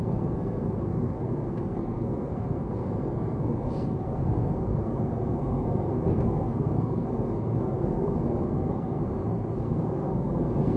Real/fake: fake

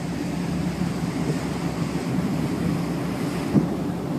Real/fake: real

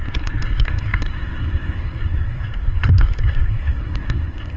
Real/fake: fake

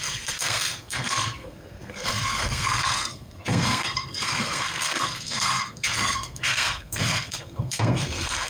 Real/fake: fake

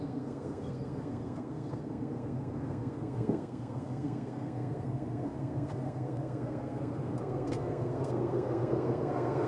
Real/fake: fake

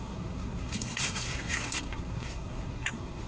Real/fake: fake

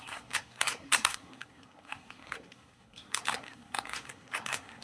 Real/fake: fake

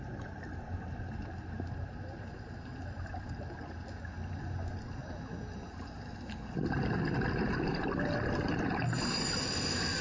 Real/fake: real